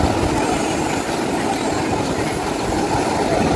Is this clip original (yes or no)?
yes